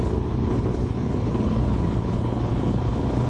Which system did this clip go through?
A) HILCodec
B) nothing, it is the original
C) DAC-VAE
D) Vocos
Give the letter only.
A